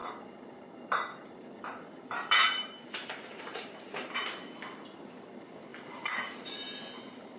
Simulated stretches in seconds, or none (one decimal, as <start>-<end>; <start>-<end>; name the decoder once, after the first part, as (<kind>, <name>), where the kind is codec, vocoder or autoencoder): 2.4-4.3 (vocoder, BigVGAN v2); 5.7-7.4